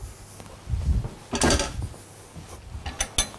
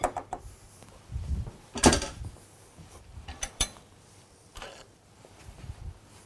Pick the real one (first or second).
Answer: first